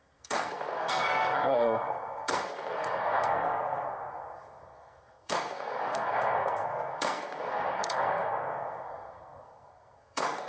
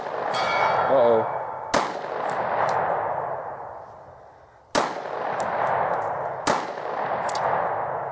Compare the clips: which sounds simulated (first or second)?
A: first